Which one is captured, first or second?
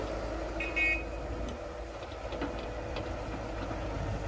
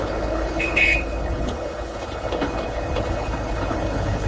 first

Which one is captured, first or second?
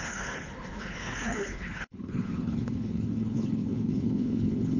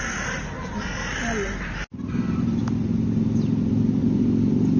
second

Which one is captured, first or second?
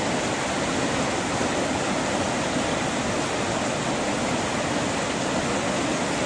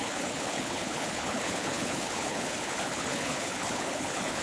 first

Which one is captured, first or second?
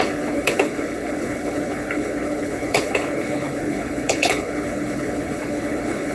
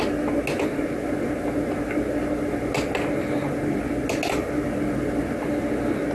second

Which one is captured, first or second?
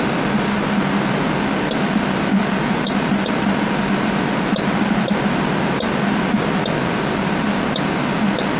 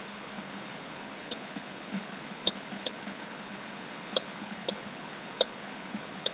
first